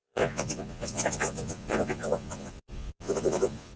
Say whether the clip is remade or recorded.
remade